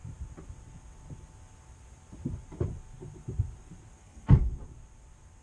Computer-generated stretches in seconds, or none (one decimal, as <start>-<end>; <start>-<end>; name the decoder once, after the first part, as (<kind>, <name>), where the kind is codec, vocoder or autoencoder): 4.0-4.5 (codec, SNAC)